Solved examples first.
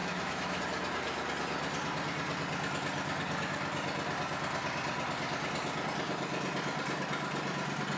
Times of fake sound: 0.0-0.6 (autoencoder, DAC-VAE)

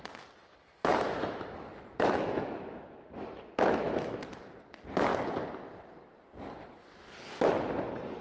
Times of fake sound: 0.9-4.2 (autoencoder, DAC-VAE)

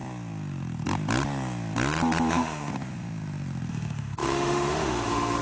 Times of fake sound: 2.3-2.7 (autoencoder, DAC-VAE); 3.7-5.4

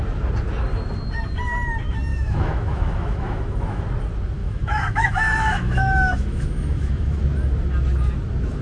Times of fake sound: 2.1-3.8 (autoencoder, DAC-VAE); 4.4-7.2

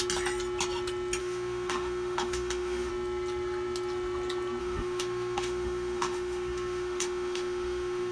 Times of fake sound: 1.2-2.9 (autoencoder, DAC-VAE); 4.6-8.1

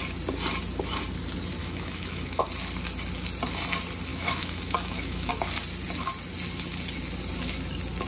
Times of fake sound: 1.6-2.4 (autoencoder, DAC-VAE); 4.1-5.3

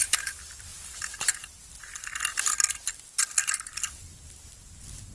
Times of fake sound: none

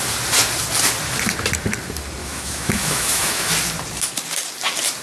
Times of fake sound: 2.2-3.5 (autoencoder, DAC-VAE)